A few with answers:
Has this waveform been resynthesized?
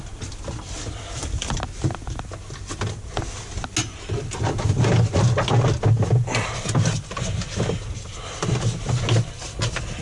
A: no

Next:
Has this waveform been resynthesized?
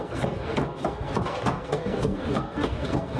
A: yes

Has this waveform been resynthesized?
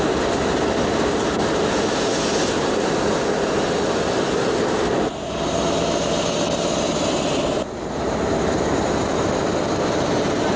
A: no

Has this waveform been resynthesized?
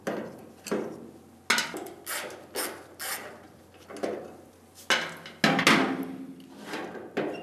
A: no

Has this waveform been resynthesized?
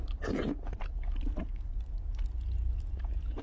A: no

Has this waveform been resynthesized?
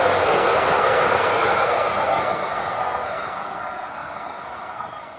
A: yes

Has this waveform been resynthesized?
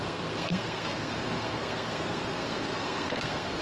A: yes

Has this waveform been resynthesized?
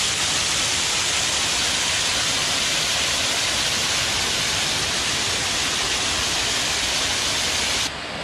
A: no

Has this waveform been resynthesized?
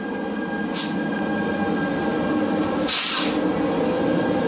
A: no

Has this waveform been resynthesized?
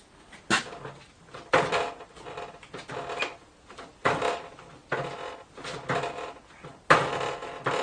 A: no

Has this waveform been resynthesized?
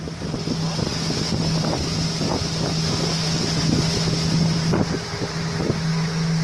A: no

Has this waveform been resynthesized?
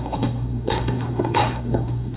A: yes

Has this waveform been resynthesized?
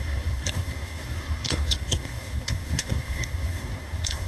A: yes